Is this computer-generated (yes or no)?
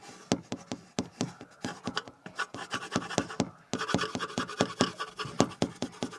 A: no